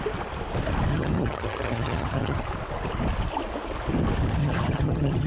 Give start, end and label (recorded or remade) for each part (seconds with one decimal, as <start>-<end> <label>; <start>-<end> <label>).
0.0-0.9 recorded; 0.9-2.4 remade; 2.4-4.4 recorded; 4.4-5.3 remade